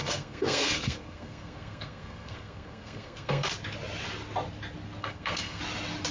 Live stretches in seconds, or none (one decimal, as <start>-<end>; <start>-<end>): 3.5-5.0; 5.6-6.1